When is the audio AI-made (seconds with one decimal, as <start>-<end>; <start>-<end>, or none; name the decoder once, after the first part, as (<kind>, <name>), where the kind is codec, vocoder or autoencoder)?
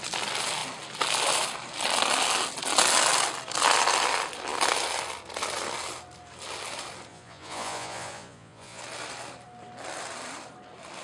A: 7.1-8.8 (vocoder, Vocos)